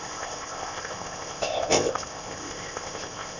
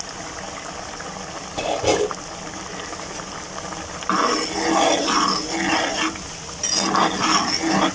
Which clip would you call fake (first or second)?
first